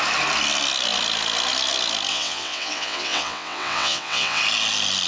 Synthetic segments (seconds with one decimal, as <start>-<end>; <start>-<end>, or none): 2.1-4.4